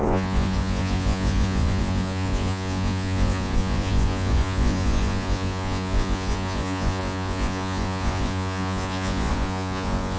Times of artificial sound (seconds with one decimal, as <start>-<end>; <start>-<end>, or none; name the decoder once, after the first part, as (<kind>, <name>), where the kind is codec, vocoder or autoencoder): 0.0-10.2 (vocoder, Vocos)